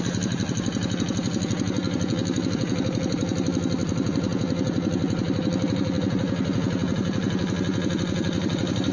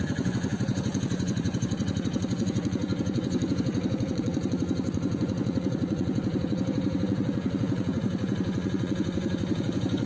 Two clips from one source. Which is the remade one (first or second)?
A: second